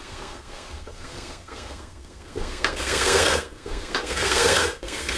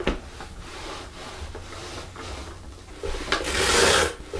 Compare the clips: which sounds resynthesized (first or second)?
first